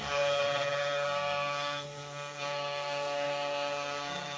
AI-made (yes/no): yes